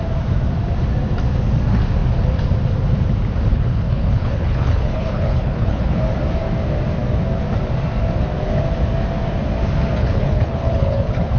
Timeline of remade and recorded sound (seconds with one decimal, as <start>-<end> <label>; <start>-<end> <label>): 0.0-3.5 recorded; 3.5-6.0 remade; 6.0-10.0 recorded; 10.0-11.4 remade